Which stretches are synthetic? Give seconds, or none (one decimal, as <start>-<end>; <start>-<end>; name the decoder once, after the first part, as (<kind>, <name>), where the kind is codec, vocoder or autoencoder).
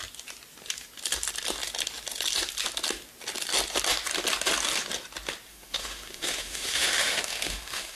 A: 5.5-8.0 (autoencoder, DAC-VAE)